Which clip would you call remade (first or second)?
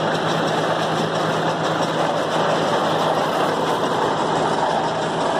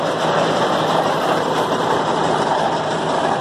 second